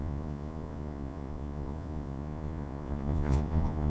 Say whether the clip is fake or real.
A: fake